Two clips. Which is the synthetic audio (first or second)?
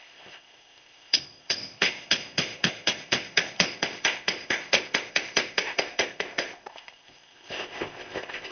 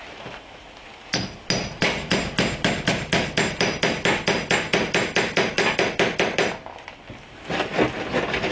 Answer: first